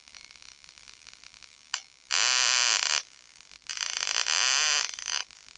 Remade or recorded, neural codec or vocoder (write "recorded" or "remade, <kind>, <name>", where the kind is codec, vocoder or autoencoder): recorded